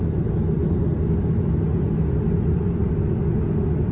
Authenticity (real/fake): real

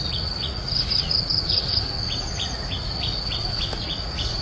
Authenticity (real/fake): fake